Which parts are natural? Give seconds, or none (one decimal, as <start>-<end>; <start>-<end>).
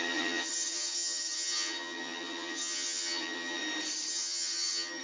3.6-4.1